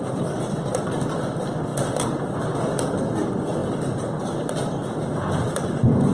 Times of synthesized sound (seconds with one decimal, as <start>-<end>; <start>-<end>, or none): none